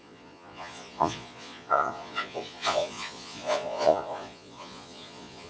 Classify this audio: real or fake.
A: fake